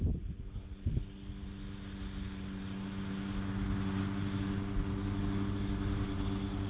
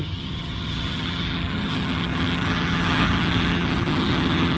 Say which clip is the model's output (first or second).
second